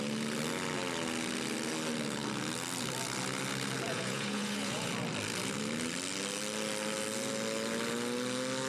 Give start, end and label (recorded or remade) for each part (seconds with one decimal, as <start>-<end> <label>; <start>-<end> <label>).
0.0-3.9 recorded; 3.9-4.9 remade; 4.9-8.7 recorded